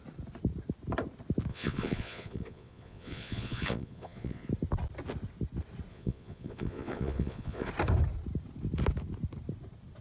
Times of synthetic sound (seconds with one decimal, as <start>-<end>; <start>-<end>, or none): 1.5-4.5; 5.9-7.7